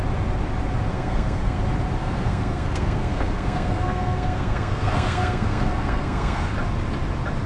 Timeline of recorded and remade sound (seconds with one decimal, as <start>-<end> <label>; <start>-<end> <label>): 0.0-0.9 recorded; 0.9-1.6 remade; 1.6-2.0 recorded; 2.0-6.5 remade; 6.5-7.5 recorded

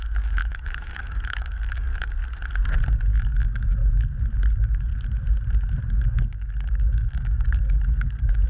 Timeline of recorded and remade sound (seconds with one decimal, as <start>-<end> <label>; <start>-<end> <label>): 0.0-2.2 remade; 2.2-2.9 recorded; 2.9-3.8 remade; 3.8-4.5 recorded; 4.5-4.9 remade; 4.9-5.9 recorded; 5.9-8.5 remade

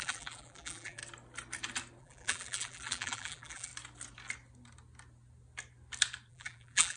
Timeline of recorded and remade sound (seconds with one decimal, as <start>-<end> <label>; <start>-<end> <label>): 0.0-1.0 remade; 1.0-2.0 recorded; 2.0-3.7 remade; 3.7-6.3 recorded; 6.3-7.0 remade

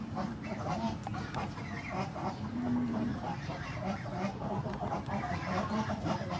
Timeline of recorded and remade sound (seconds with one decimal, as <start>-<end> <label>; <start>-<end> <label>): 0.0-6.4 remade

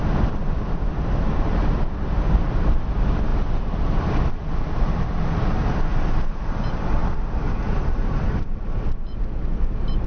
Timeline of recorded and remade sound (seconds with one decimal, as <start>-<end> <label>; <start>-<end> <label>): 0.0-10.1 recorded

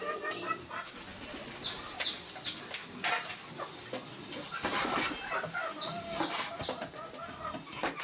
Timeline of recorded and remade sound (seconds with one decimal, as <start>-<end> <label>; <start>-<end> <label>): 0.0-8.0 recorded

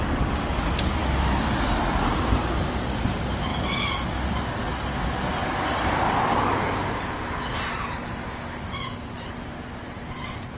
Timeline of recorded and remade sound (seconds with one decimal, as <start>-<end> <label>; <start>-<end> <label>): 0.0-10.6 recorded